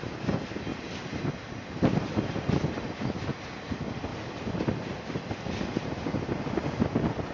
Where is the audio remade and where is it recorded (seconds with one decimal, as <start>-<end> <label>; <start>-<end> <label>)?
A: 0.0-7.3 recorded